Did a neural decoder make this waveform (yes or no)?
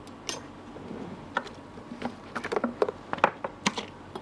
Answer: no